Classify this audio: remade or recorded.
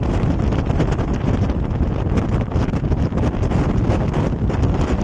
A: recorded